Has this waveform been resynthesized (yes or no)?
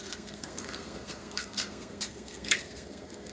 yes